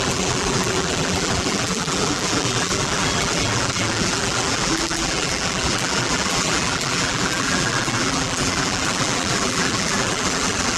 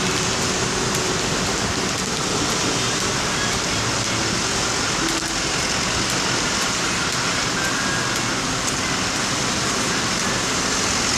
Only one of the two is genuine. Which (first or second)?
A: second